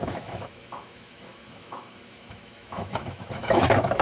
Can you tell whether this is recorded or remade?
remade